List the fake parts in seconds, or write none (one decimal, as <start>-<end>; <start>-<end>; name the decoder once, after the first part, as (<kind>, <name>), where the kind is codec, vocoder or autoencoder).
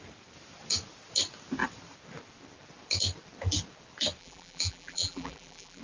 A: 4.2-5.8 (vocoder, BigVGAN v2)